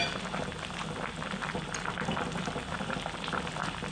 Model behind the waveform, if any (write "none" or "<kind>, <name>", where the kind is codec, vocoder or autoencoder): none